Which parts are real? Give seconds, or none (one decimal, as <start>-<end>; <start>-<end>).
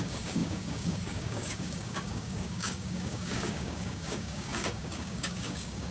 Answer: none